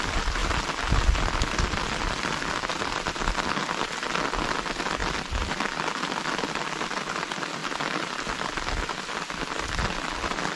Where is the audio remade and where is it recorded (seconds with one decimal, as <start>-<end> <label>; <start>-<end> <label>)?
0.0-10.6 recorded